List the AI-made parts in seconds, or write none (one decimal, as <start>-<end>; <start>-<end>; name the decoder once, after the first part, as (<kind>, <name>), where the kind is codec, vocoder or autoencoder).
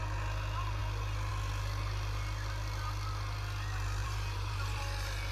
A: 4.0-4.8 (vocoder, BigVGAN v2)